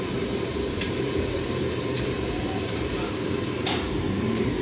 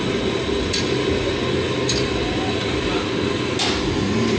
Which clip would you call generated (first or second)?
first